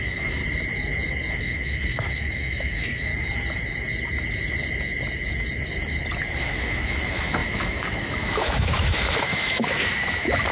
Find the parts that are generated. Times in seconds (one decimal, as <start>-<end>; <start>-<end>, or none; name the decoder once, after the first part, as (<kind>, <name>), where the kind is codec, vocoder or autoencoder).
0.0-0.4 (autoencoder, DAC-VAE); 1.3-3.1; 6.4-10.5